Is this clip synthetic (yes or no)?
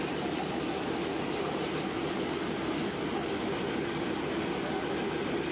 no